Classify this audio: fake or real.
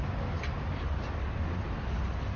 real